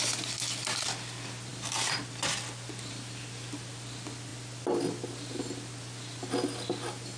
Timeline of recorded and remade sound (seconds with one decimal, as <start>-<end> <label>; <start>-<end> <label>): 0.0-7.2 recorded